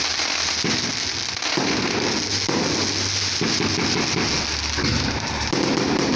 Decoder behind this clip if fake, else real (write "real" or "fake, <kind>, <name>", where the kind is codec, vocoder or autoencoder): real